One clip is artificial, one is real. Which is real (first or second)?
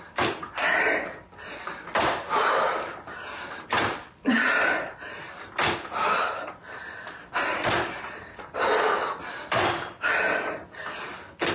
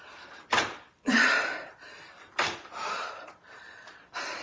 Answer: first